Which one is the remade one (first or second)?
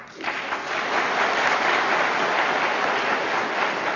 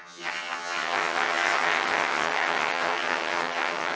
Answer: second